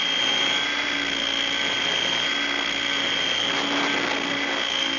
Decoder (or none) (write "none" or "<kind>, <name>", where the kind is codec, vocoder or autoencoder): none